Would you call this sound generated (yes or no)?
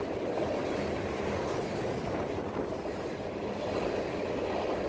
no